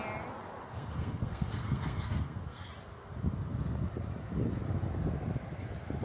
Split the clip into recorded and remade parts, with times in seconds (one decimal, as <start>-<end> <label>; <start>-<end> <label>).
0.0-0.6 recorded; 0.6-2.7 remade; 2.7-6.0 recorded